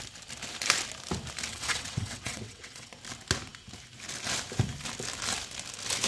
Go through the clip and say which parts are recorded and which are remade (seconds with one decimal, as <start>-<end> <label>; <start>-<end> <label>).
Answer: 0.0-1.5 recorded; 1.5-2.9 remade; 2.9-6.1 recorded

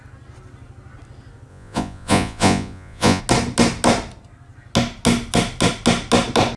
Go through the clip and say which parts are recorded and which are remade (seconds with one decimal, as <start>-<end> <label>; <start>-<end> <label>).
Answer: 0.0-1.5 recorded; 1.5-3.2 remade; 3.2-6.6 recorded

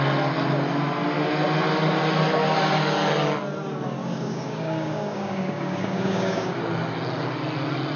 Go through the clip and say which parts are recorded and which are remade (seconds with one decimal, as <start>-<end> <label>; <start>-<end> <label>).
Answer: 0.0-4.0 recorded; 4.0-6.6 remade; 6.6-8.0 recorded

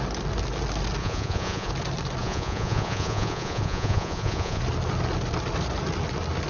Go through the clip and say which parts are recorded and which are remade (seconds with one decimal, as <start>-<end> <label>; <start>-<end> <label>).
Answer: 0.0-1.0 recorded; 1.0-1.7 remade; 1.7-2.2 recorded; 2.2-4.6 remade; 4.6-6.5 recorded